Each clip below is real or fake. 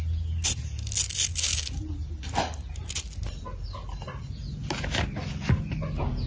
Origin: real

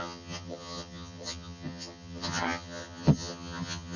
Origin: fake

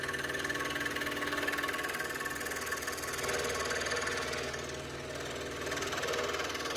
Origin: real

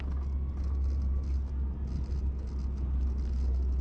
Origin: real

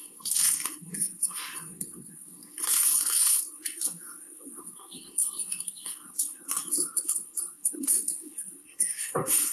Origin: fake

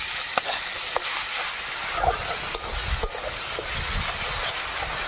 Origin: real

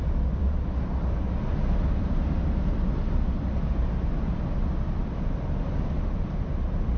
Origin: real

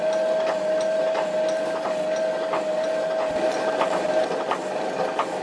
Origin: real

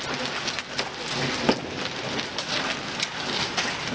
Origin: real